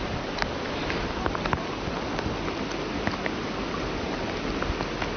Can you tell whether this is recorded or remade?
recorded